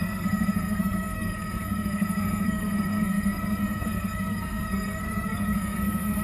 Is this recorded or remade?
remade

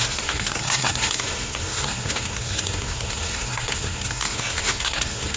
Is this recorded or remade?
remade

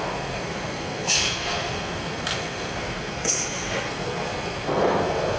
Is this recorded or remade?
remade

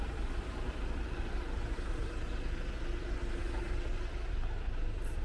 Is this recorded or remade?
recorded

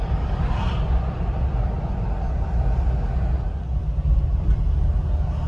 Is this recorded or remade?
recorded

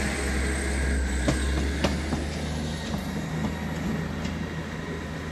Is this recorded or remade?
recorded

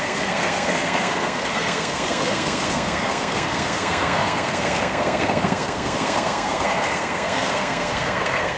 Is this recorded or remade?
remade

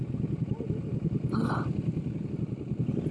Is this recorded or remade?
recorded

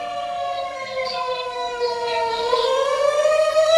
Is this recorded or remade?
remade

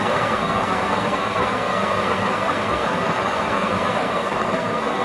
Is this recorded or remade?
remade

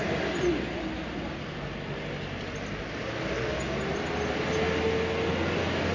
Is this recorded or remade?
recorded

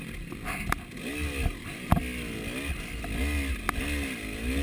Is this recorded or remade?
recorded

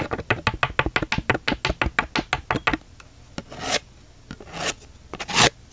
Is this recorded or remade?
recorded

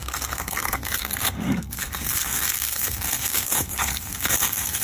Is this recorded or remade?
remade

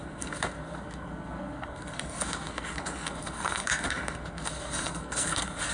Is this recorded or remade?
remade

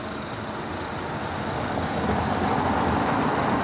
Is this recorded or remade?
recorded